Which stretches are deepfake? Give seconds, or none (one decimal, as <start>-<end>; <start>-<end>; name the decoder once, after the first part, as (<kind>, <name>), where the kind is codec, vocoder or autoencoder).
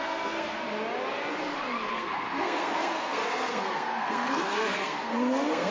0.0-0.6 (codec, SNAC); 1.9-5.7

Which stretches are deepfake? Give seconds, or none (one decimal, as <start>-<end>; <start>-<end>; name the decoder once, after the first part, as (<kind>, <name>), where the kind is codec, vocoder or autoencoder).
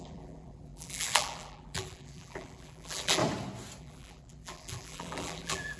0.0-3.2 (vocoder, BigVGAN v2); 3.8-5.8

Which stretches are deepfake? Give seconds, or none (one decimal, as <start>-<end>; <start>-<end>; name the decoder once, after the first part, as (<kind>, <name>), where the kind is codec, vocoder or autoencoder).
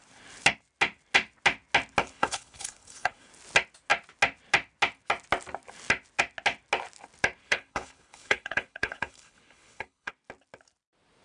2.0-3.3 (codec, HILCodec); 7.4-10.1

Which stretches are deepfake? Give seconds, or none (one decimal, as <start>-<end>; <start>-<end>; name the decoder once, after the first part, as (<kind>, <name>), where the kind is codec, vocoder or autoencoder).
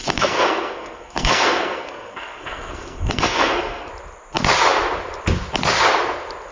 0.0-3.9 (codec, SNAC)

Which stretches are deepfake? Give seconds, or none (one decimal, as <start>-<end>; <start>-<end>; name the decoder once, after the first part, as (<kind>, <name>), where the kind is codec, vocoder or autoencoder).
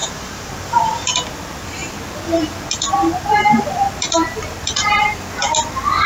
0.0-0.5 (vocoder, BigVGAN v2)